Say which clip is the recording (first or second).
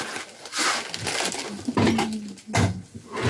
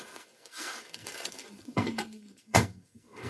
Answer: first